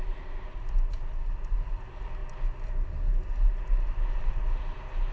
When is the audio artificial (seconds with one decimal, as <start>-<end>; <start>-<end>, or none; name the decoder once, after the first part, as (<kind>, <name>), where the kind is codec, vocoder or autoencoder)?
none